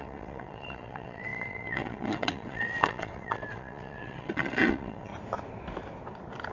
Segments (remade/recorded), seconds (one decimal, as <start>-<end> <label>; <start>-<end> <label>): 0.0-5.1 remade; 5.1-6.5 recorded